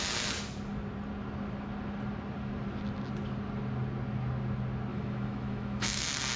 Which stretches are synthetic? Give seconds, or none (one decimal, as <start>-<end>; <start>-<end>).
4.9-6.0